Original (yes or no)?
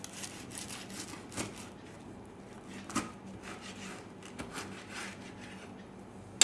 yes